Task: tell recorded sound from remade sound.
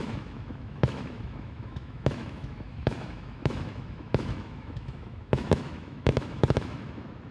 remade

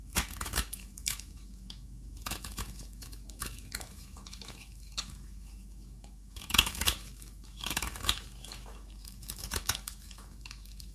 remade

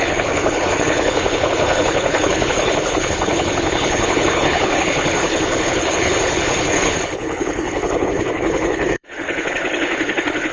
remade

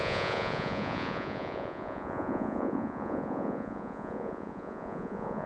remade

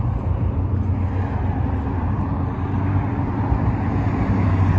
recorded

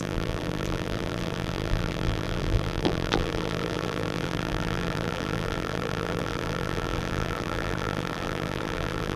remade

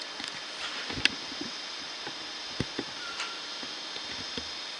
recorded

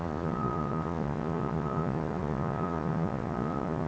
remade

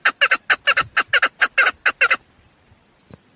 recorded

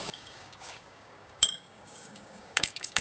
remade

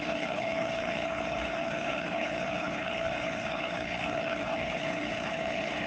remade